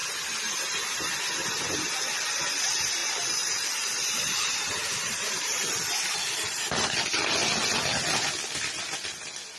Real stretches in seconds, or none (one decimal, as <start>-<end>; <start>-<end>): 0.0-3.0; 7.0-9.6